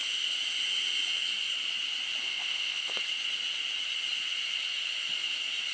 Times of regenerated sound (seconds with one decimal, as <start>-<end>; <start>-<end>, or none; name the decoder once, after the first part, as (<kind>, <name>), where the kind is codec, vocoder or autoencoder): 2.2-3.0 (codec, ZipCodec)